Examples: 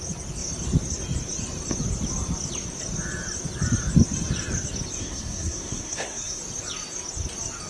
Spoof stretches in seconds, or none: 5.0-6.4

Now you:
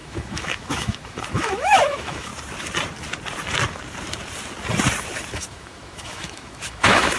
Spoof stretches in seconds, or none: 0.0-2.3; 5.3-7.2

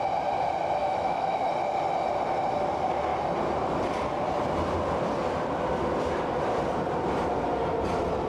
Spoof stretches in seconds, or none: 0.8-1.4

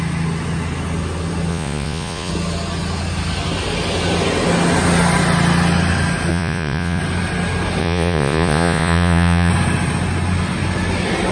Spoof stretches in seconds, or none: 1.5-2.3; 6.3-7.0; 7.8-9.5

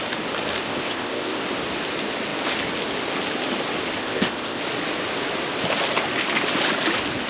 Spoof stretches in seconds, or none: 0.6-1.4; 4.0-4.6

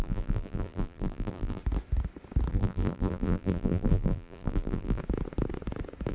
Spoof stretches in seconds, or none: 0.0-1.6; 2.5-5.0

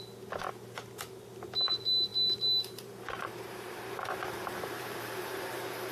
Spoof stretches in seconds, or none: 2.1-5.9